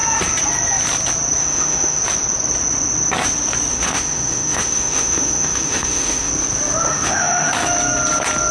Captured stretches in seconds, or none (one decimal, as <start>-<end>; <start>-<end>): 0.0-1.4; 2.0-3.7; 6.3-6.9; 7.5-8.5